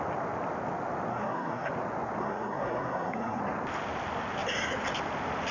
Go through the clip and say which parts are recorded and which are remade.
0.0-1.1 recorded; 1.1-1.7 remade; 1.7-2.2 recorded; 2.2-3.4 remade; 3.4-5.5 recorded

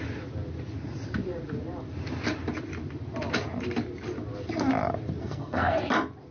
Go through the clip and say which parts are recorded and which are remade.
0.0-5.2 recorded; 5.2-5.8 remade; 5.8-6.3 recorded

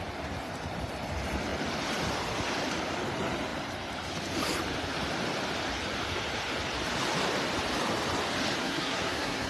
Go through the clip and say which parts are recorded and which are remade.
0.0-8.6 recorded; 8.6-9.5 remade